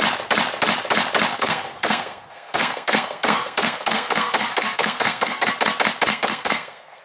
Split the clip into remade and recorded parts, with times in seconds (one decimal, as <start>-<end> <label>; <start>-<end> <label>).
0.0-1.3 recorded; 1.3-5.5 remade; 5.5-6.1 recorded; 6.1-7.0 remade